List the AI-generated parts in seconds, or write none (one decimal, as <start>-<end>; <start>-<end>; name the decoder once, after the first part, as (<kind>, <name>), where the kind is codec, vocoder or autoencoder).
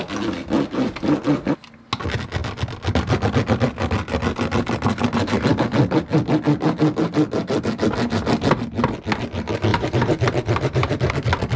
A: 9.7-11.1 (vocoder, BigVGAN v2)